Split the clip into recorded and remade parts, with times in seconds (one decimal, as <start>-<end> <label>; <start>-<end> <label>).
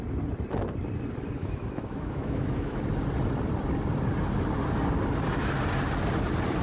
0.0-1.4 recorded; 1.4-2.8 remade; 2.8-6.6 recorded